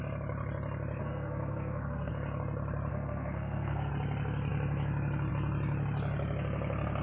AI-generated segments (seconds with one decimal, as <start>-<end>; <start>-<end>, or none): 1.0-2.1; 2.9-3.9